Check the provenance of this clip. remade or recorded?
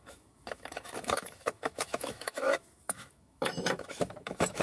remade